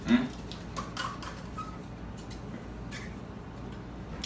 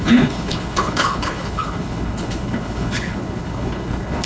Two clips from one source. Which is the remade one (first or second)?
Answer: second